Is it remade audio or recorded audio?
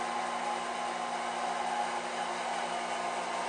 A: recorded